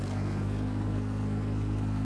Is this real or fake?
fake